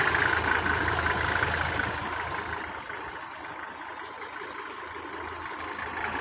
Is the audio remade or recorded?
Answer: recorded